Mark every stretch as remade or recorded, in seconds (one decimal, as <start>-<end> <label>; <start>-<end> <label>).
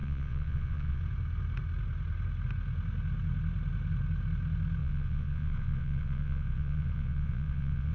0.0-1.0 remade; 1.0-4.8 recorded; 4.8-7.9 remade